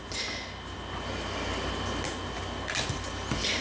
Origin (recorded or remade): recorded